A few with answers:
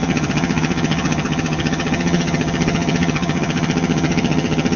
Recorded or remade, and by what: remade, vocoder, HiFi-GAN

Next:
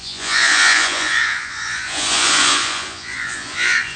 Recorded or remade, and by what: remade, vocoder, Vocos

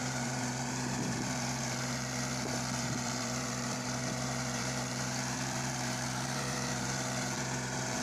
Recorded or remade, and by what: remade, vocoder, BigVGAN v2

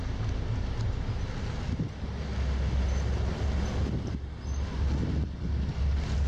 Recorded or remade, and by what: recorded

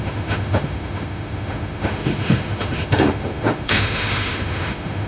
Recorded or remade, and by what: remade, autoencoder, DAC-VAE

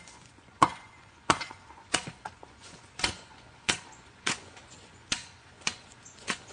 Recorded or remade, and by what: remade, vocoder, Vocos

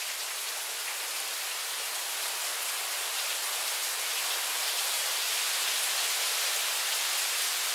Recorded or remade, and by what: recorded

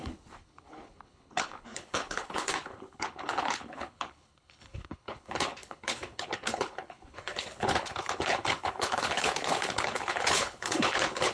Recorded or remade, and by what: remade, codec, HILCodec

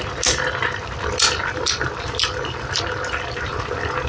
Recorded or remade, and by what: recorded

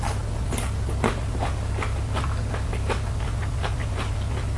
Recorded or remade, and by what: recorded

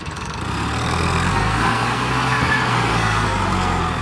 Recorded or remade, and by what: remade, codec, SNAC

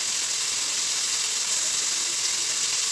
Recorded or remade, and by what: recorded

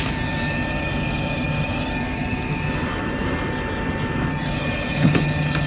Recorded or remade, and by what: recorded